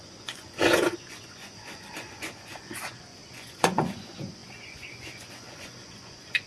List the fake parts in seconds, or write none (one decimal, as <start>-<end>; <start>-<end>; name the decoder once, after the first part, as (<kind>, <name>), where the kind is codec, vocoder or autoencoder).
0.0-6.5 (vocoder, Vocos)